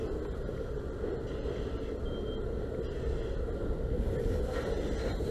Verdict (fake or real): real